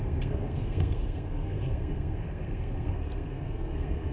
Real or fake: fake